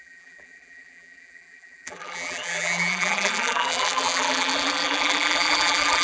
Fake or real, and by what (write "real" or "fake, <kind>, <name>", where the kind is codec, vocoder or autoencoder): fake, vocoder, BigVGAN v2